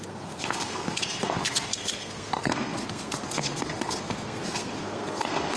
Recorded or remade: remade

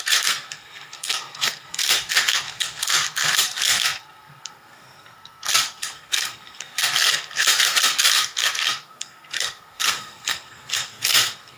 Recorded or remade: remade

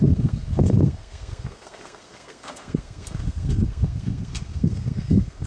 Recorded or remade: remade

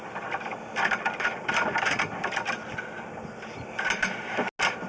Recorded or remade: recorded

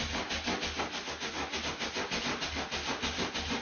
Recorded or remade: recorded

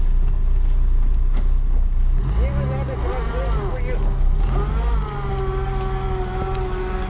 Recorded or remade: recorded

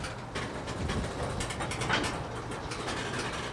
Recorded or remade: recorded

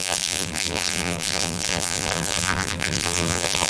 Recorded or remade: remade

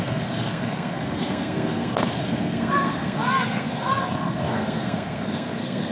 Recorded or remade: remade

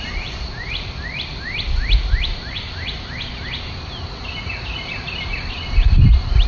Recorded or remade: recorded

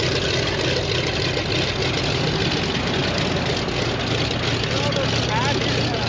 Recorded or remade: recorded